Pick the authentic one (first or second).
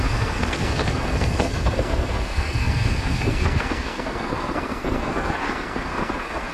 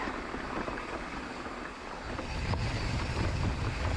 second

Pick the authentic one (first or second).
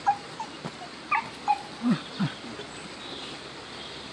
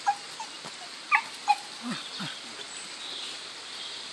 second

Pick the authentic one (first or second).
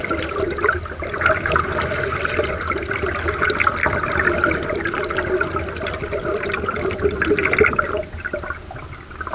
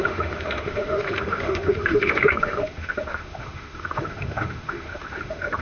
first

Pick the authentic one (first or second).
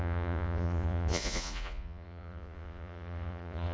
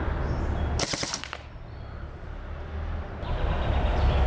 second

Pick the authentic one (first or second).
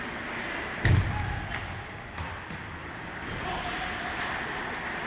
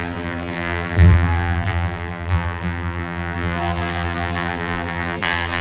first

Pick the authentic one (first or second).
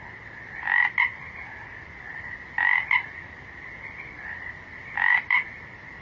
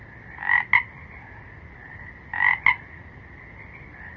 second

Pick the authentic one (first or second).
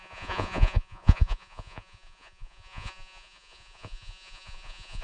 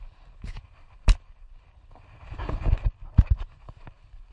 second